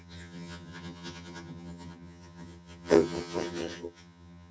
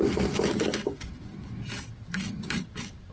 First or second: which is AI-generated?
first